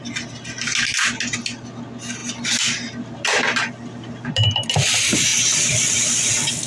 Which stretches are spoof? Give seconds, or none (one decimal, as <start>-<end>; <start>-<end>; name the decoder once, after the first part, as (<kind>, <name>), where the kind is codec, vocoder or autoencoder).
2.2-4.7 (vocoder, BigVGAN v2); 5.3-6.3